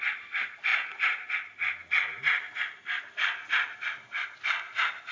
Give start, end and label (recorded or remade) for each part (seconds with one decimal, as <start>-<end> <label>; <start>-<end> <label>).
0.0-0.7 recorded; 0.7-1.3 remade; 1.3-5.1 recorded